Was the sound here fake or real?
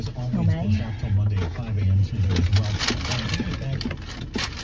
real